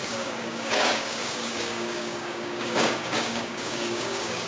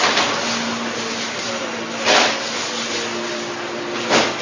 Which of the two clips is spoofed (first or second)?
first